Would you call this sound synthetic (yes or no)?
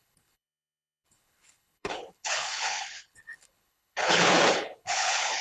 yes